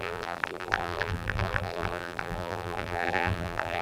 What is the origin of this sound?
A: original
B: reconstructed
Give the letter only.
B